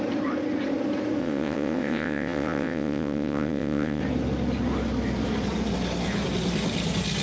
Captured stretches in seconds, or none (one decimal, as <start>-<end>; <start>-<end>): 0.0-1.2; 4.0-7.2

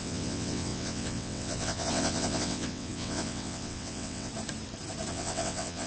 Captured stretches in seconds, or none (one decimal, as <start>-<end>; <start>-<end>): 4.3-5.1

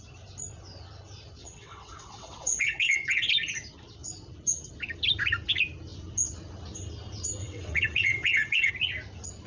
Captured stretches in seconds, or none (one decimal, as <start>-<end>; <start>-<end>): 0.0-1.4; 3.3-7.4; 8.7-9.5

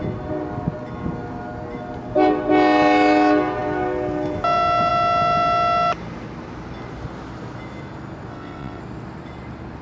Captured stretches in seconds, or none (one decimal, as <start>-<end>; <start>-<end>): 0.0-8.3; 8.8-9.8

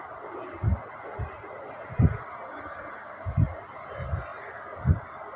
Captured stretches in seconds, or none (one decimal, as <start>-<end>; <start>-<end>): 0.0-5.4

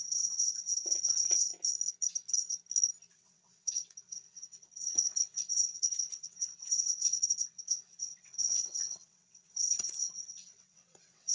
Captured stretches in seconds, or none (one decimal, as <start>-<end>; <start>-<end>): 1.5-3.1